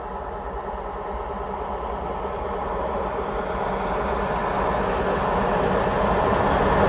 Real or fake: real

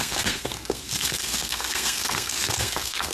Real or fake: fake